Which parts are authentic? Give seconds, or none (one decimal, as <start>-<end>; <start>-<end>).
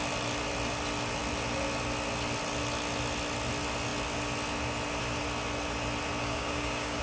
0.0-6.2